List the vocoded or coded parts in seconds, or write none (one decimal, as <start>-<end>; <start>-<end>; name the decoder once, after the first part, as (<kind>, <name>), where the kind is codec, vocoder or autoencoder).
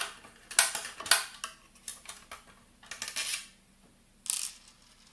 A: none